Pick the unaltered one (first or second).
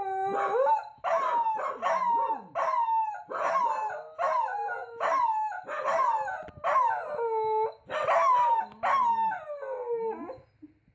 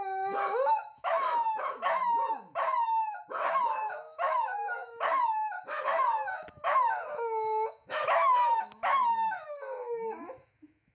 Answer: first